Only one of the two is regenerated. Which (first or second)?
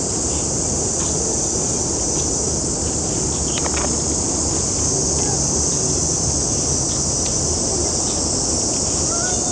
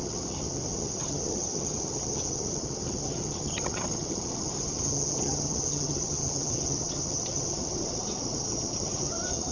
second